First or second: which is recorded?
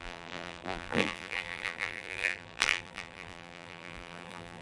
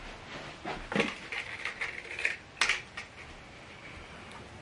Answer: second